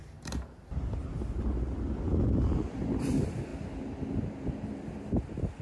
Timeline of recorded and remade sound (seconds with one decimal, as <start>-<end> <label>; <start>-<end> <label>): 0.0-5.6 recorded